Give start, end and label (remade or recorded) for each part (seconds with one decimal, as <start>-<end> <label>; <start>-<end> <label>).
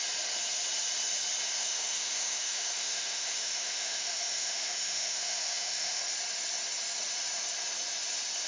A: 0.0-1.6 recorded; 1.6-6.0 remade; 6.0-8.5 recorded